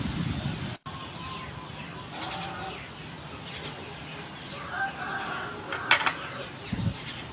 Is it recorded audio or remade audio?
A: recorded